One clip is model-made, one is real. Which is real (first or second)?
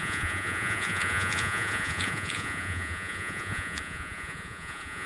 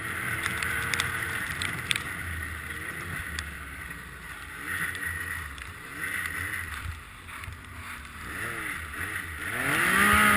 second